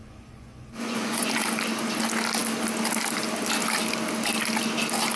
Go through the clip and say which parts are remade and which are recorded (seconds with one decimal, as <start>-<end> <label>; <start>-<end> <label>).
0.0-1.3 remade; 1.3-5.2 recorded